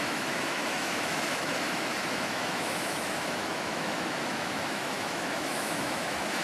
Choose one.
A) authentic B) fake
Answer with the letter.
B